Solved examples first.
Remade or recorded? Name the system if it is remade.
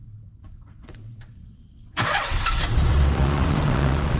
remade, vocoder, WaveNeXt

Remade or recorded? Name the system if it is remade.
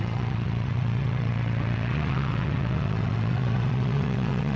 remade, vocoder, WaveNeXt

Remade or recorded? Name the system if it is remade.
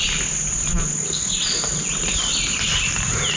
recorded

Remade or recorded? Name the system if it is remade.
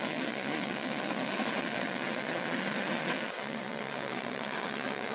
remade, vocoder, WaveNeXt